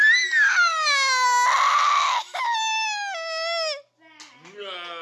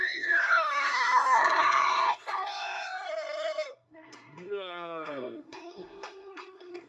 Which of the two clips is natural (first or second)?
first